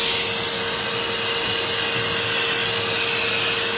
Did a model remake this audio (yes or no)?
no